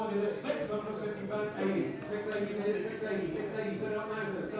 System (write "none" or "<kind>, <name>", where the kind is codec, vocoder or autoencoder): none